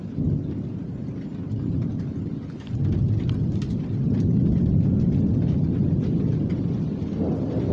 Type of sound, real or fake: real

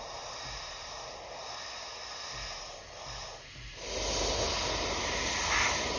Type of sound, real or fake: real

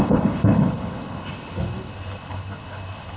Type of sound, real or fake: fake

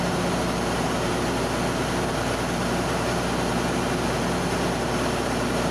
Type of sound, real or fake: real